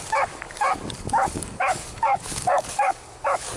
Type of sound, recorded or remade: remade